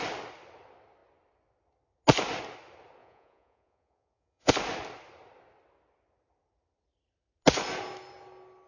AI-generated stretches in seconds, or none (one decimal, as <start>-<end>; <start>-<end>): 3.0-4.5